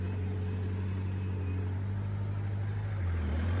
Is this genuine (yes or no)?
yes